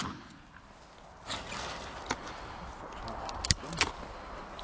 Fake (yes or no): no